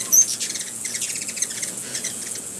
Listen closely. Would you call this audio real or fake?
fake